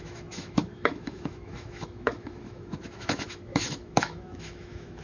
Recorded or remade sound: remade